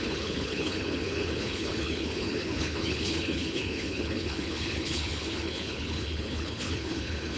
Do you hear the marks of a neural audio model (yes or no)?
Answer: yes